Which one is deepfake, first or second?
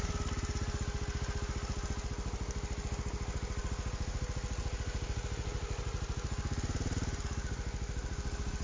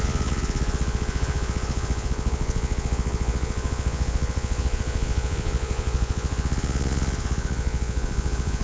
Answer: second